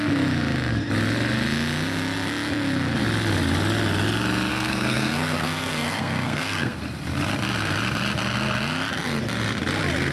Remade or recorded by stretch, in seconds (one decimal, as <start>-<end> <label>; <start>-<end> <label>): 0.0-4.5 recorded; 4.5-6.8 remade; 6.8-10.1 recorded